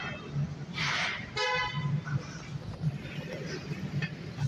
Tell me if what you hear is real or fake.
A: real